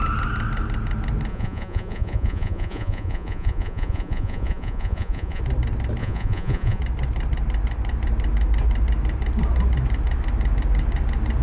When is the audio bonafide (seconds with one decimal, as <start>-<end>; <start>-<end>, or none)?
0.0-1.3; 5.4-6.0; 6.8-11.4